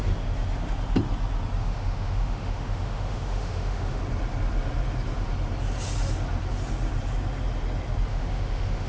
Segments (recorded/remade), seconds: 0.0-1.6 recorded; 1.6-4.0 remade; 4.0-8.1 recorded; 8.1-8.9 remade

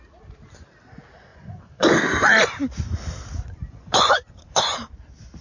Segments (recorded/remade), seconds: 0.0-1.3 recorded; 1.3-2.0 remade; 2.0-3.7 recorded; 3.7-4.8 remade; 4.8-5.4 recorded

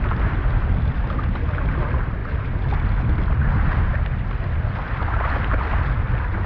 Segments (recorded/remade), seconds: 0.0-6.5 recorded

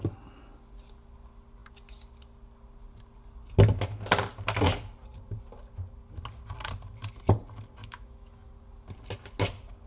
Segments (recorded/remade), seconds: 0.0-7.8 recorded; 7.8-8.5 remade; 8.5-9.9 recorded

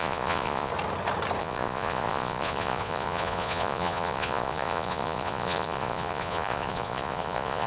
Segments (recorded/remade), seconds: 0.0-0.7 remade; 0.7-1.4 recorded; 1.4-7.7 remade

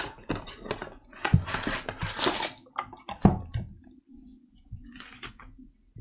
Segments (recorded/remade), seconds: 0.0-1.0 recorded; 1.0-1.5 remade; 1.5-4.1 recorded; 4.1-5.3 remade; 5.3-6.0 recorded